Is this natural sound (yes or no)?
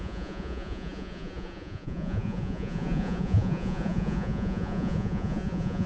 no